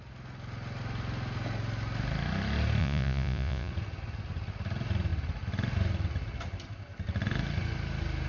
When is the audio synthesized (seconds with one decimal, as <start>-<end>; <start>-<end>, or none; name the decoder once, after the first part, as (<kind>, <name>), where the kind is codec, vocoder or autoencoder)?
2.8-3.7 (vocoder, Vocos)